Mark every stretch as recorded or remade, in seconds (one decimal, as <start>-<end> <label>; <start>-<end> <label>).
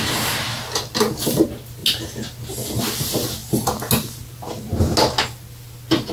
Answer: 0.0-6.1 recorded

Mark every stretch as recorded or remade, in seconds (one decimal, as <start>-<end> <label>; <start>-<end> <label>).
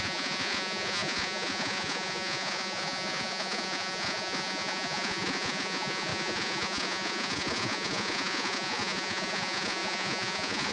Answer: 0.0-10.7 remade